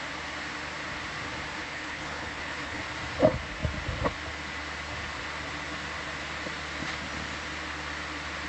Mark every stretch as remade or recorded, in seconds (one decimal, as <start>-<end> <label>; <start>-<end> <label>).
0.0-1.6 recorded; 1.6-2.8 remade; 2.8-8.5 recorded